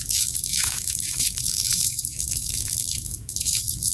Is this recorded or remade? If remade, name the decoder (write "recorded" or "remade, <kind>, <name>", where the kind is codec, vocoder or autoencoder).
remade, autoencoder, DAC-VAE